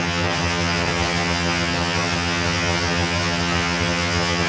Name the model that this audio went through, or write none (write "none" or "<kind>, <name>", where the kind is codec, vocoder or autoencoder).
vocoder, HiFi-GAN